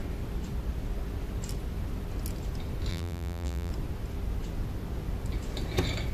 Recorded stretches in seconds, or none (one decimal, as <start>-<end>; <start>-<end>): 0.0-2.9; 3.7-6.1